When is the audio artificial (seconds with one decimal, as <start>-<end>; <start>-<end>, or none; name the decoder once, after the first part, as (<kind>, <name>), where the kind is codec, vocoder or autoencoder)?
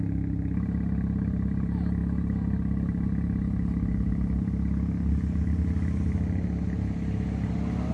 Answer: none